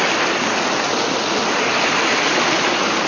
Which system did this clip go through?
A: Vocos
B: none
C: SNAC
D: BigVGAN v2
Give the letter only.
B